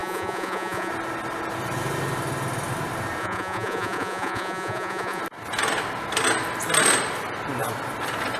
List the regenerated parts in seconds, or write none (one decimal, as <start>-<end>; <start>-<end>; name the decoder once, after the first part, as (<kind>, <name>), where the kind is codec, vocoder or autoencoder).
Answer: 0.0-0.9 (vocoder, Vocos); 3.2-5.2